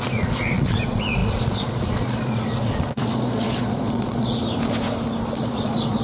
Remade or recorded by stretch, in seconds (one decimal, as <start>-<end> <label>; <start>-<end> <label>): 0.0-4.4 remade; 4.4-5.4 recorded; 5.4-6.0 remade